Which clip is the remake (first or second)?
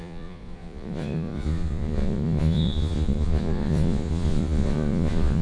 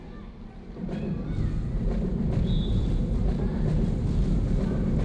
first